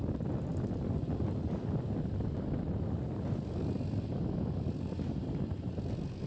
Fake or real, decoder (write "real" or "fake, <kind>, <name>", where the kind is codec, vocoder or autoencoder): real